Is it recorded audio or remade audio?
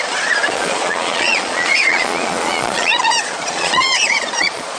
remade